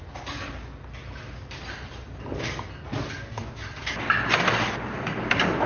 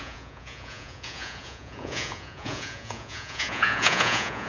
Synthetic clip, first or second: second